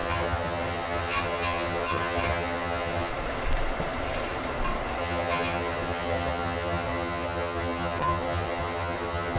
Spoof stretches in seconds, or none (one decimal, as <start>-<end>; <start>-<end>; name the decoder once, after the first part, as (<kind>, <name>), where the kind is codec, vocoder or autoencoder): 0.0-3.1 (vocoder, HiFi-GAN); 5.0-9.4